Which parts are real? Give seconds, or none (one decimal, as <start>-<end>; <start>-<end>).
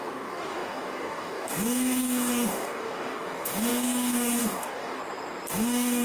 5.0-5.5